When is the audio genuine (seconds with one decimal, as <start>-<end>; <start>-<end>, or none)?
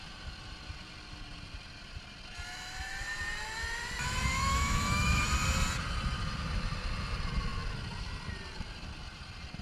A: 0.0-4.3; 5.2-9.6